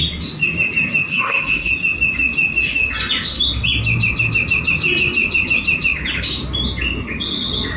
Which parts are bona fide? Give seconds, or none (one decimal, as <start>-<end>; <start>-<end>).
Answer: 0.0-1.1; 1.7-7.8